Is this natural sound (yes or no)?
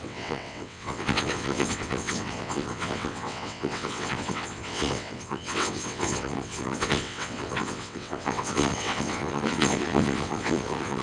no